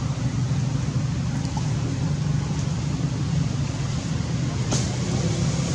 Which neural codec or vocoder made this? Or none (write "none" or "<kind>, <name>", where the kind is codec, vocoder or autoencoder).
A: none